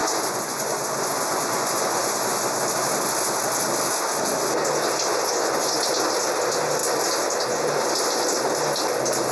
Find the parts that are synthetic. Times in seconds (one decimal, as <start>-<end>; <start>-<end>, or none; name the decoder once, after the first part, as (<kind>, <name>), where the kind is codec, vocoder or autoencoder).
0.0-2.6 (vocoder, Vocos); 5.1-5.8